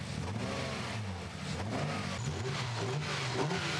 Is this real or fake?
real